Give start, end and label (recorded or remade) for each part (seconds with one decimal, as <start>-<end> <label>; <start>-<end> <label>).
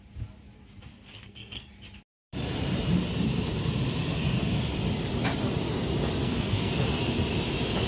0.0-0.9 recorded; 0.9-1.7 remade; 1.7-6.2 recorded; 6.2-6.7 remade; 6.7-7.9 recorded